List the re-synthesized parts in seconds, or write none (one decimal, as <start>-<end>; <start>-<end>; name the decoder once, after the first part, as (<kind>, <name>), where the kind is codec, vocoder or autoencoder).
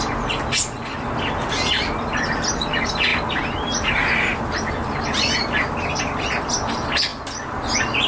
none